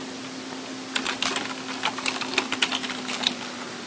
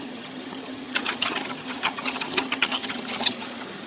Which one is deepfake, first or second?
second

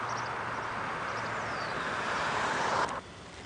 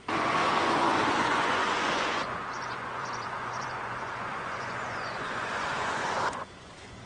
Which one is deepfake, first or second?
second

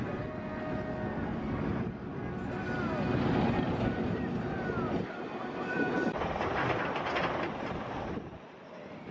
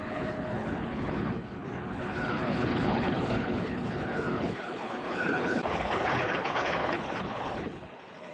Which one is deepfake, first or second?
second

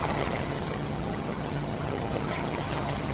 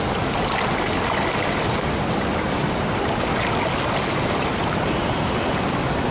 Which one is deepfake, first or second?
first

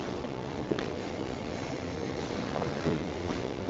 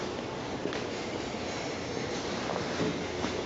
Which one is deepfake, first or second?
first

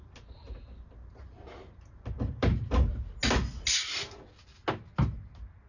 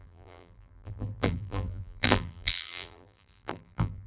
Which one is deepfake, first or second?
second